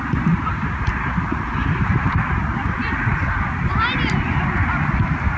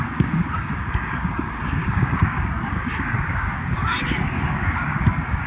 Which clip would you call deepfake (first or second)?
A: second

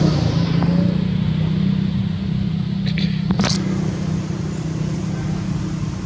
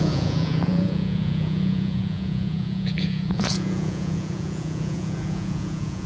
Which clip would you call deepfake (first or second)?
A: second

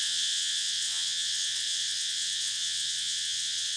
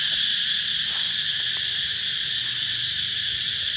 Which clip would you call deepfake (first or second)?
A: first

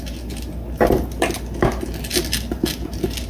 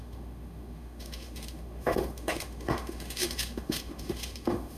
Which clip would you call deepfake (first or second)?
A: second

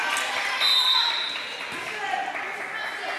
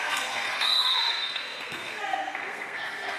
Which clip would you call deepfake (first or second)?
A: second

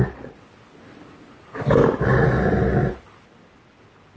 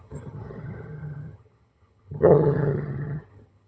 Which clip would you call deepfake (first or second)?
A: second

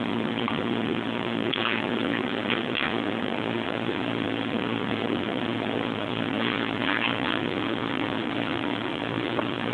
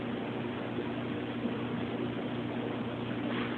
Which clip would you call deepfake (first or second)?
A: first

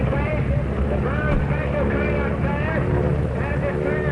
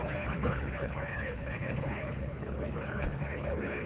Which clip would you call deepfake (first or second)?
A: second